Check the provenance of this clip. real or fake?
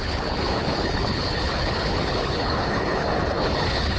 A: fake